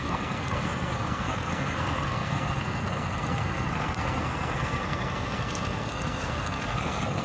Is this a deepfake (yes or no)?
yes